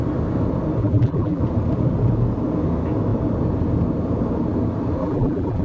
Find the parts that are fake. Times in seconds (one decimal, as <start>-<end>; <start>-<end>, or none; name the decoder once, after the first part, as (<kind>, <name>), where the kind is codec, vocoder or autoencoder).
0.8-1.4 (vocoder, BigVGAN v2); 5.0-5.6